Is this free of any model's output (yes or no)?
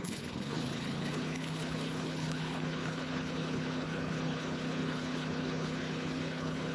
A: no